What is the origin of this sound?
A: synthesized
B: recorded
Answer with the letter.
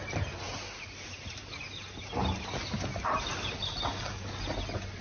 B